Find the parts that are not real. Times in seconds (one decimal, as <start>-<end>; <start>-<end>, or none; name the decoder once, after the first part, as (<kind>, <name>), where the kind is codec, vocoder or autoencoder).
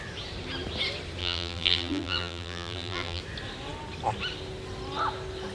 1.2-3.2 (vocoder, BigVGAN v2)